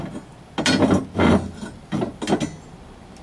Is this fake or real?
real